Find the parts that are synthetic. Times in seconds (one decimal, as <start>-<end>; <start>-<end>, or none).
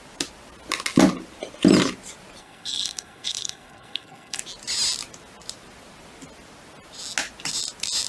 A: 2.4-4.4